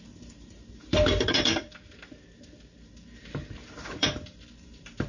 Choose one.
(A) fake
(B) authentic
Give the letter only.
A